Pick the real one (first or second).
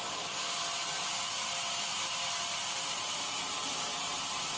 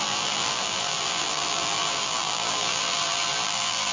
first